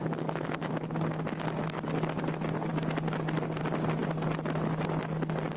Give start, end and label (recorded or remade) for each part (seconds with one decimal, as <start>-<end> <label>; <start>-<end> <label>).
0.0-0.7 remade; 0.7-5.6 recorded